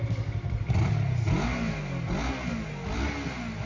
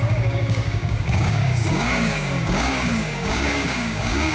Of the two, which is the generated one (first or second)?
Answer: second